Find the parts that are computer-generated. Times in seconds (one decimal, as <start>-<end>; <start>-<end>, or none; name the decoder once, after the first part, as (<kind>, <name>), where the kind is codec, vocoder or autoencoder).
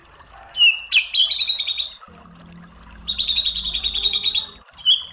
3.1-4.4 (vocoder, Vocos)